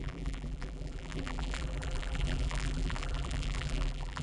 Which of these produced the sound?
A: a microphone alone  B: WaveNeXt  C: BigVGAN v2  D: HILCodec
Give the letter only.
C